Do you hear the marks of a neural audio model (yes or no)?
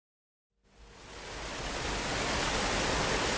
no